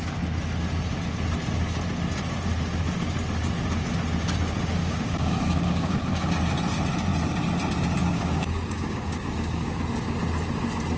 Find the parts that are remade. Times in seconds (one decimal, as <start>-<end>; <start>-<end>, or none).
4.8-5.9; 8.0-9.8